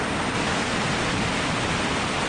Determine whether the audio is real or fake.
real